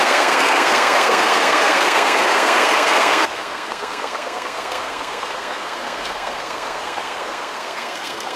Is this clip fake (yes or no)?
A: yes